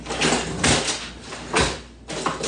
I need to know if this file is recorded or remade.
recorded